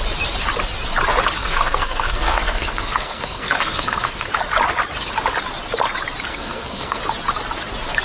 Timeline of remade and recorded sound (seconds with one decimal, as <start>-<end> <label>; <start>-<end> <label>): 0.0-1.4 recorded; 1.4-4.3 remade; 4.3-6.3 recorded; 6.3-7.0 remade; 7.0-8.0 recorded